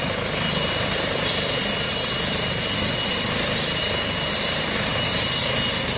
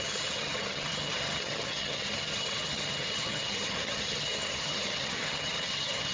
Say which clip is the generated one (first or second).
second